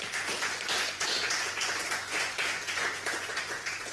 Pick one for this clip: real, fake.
fake